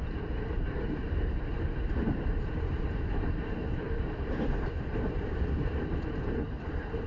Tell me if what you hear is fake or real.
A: fake